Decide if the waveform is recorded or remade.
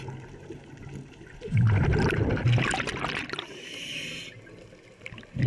recorded